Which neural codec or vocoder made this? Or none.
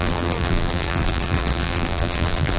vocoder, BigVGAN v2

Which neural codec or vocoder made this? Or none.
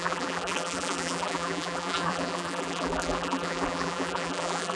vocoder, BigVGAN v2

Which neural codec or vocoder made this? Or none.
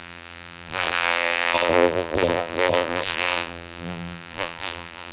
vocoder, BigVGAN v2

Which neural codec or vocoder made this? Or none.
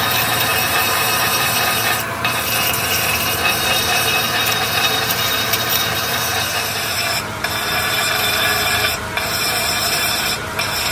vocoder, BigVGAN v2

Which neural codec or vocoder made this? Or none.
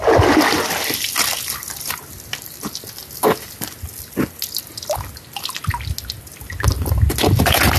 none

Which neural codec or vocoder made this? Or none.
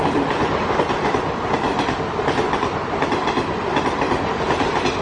none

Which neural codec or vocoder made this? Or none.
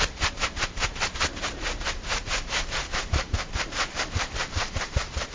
vocoder, BigVGAN v2